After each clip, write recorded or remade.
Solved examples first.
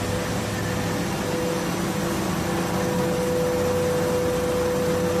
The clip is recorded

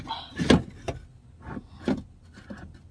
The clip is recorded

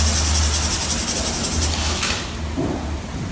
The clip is recorded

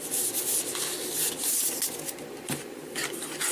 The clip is recorded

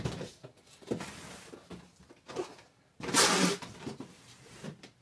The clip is recorded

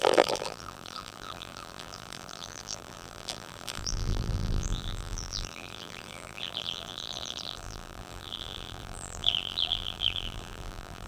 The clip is remade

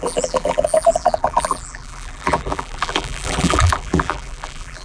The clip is remade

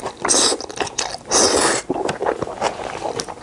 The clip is recorded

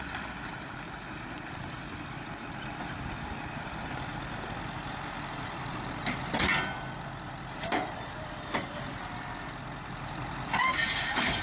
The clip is remade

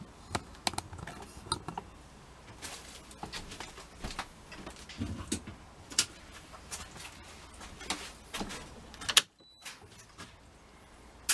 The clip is recorded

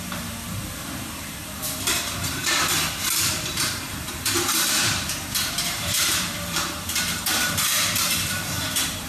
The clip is remade